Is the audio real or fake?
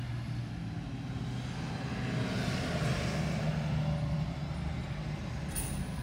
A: real